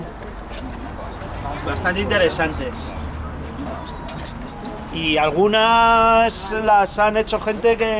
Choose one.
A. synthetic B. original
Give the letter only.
B